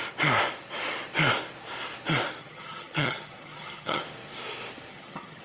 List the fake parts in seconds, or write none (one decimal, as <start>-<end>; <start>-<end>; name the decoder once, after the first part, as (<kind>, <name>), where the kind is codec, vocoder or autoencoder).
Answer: 2.4-4.0 (vocoder, HiFi-GAN); 4.9-5.4